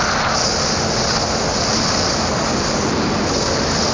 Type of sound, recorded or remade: recorded